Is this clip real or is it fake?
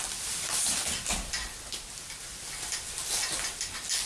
real